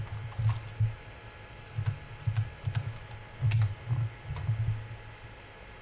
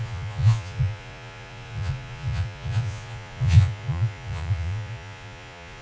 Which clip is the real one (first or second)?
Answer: first